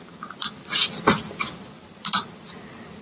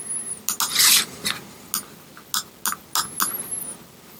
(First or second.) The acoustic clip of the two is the second